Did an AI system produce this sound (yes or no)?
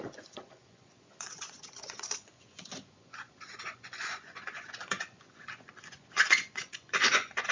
yes